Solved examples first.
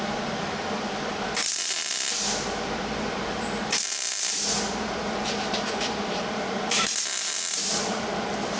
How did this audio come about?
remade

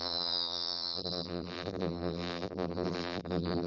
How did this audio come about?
remade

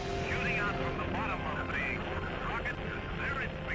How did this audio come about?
recorded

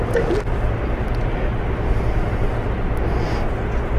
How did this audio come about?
recorded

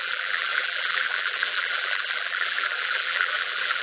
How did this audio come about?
remade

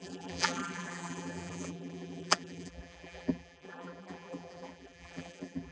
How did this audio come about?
remade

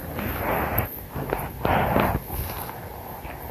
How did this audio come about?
recorded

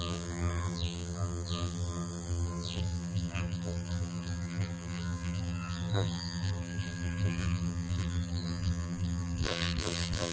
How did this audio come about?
remade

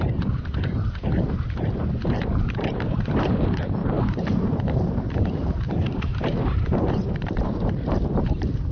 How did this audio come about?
remade